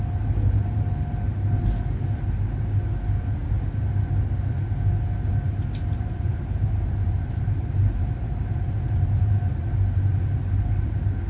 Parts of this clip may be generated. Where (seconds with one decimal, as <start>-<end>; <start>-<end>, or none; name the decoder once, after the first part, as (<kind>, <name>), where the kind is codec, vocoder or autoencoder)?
5.8-9.3 (vocoder, BigVGAN v2)